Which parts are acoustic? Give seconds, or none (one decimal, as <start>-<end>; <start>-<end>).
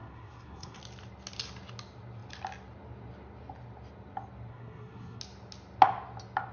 0.8-4.5; 5.2-6.5